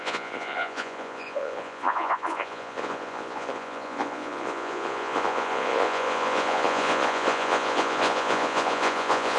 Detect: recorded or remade remade